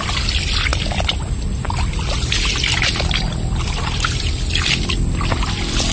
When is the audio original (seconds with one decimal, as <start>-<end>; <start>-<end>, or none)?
0.0-5.9